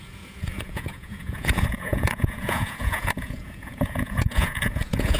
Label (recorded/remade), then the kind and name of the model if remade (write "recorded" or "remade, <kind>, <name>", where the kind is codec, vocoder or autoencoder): remade, vocoder, Vocos